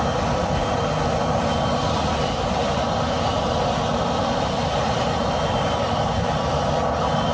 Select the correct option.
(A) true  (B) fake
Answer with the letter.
A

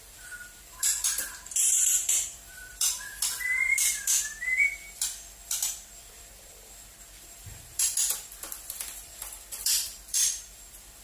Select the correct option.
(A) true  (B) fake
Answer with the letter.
B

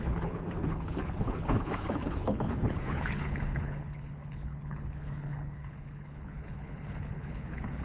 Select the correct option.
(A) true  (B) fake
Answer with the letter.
B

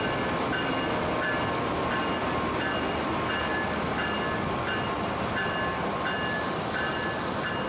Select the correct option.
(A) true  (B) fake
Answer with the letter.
A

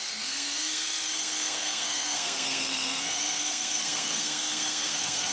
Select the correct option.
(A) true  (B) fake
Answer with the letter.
B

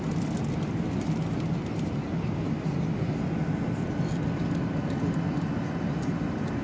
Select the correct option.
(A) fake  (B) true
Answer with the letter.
B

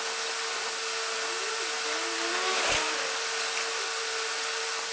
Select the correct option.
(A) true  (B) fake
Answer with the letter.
A